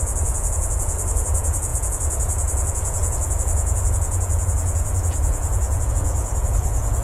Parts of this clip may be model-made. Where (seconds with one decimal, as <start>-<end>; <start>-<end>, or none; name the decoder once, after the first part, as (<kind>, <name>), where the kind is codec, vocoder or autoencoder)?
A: 0.0-7.0 (vocoder, Vocos)